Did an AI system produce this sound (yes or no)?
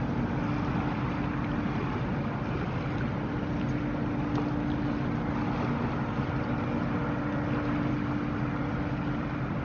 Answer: no